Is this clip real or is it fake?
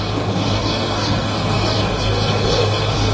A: fake